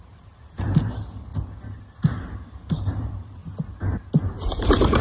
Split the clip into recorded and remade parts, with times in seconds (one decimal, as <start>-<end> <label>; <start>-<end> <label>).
0.0-1.3 remade; 1.3-1.8 recorded; 1.8-3.4 remade; 3.4-4.3 recorded; 4.3-5.0 remade